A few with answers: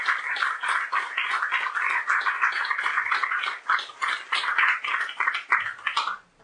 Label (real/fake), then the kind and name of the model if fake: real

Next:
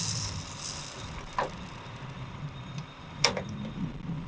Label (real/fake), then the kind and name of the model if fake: real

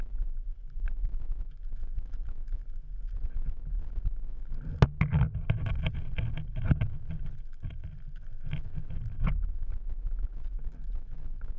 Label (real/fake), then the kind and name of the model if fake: real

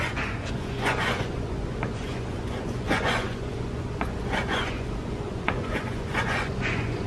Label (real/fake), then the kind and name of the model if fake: fake, vocoder, Vocos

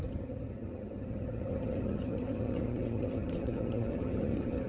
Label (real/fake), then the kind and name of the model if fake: fake, vocoder, HiFi-GAN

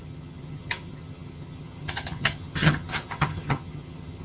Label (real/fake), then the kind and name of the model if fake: fake, vocoder, HiFi-GAN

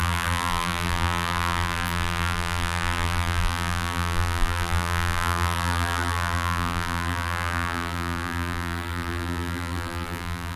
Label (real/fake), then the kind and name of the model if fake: fake, vocoder, BigVGAN v2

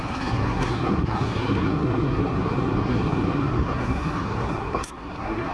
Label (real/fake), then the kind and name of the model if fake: fake, codec, SNAC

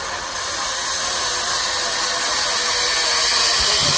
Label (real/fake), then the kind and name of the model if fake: real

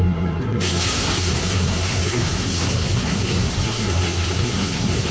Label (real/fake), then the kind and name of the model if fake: fake, codec, SNAC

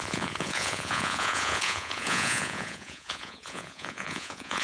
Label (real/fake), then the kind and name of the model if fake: fake, vocoder, Vocos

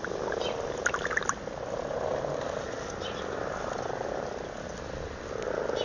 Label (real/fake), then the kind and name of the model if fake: real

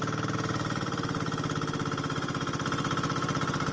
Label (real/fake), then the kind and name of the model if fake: real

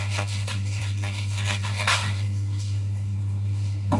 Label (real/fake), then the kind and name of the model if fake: fake, codec, SNAC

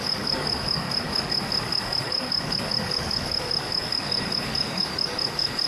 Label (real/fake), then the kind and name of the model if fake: fake, codec, DAC